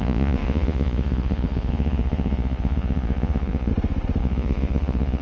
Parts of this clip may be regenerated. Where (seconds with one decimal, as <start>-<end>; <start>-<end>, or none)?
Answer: 0.0-3.7; 4.2-5.2